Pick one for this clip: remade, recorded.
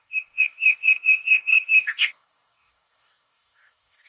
remade